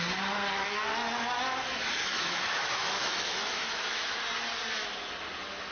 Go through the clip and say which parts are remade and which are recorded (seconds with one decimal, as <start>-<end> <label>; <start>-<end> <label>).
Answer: 0.0-2.0 recorded; 2.0-4.1 remade; 4.1-5.7 recorded